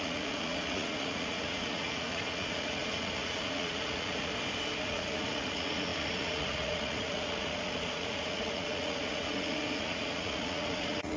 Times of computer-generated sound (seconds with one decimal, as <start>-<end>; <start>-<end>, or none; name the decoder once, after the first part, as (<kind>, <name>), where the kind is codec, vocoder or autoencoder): 0.0-4.3 (vocoder, Vocos); 4.8-11.2